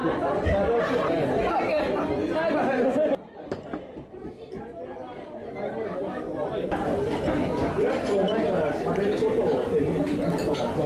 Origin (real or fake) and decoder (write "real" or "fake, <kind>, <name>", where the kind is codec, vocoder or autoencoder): real